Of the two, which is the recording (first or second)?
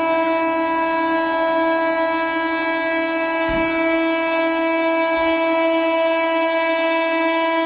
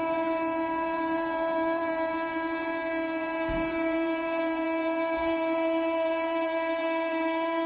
first